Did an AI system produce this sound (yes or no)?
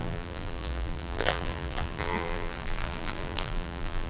yes